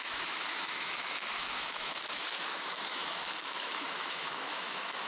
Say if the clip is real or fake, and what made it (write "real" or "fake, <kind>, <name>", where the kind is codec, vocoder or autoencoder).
fake, autoencoder, DAC-VAE